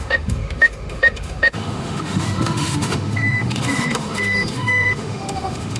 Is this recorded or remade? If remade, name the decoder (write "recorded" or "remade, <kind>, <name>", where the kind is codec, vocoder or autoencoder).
remade, autoencoder, DAC-VAE